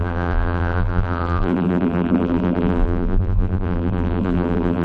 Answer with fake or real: fake